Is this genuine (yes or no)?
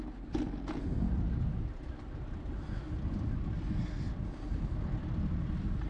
yes